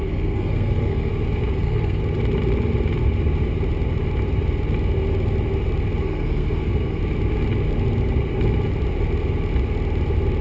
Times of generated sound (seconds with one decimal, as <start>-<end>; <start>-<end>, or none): 0.0-1.1; 1.6-2.0; 6.0-7.0